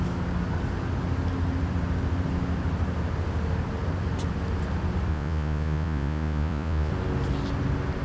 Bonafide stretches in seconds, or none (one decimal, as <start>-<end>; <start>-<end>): 0.0-5.1; 6.9-8.0